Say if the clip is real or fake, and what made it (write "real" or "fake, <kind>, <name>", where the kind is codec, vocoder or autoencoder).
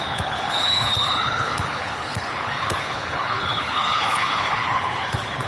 fake, codec, HILCodec